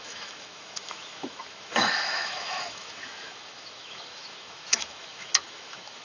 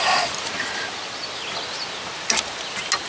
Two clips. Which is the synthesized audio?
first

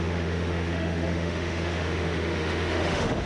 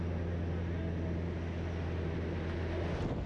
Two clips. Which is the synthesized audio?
first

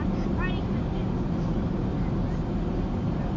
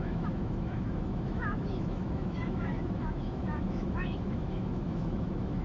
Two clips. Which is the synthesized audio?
second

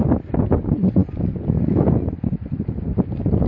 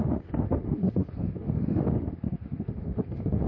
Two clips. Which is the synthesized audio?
second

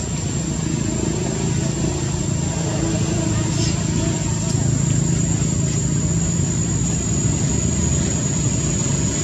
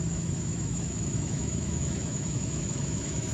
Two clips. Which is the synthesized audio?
second